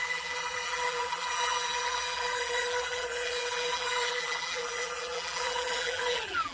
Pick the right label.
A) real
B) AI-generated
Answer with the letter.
B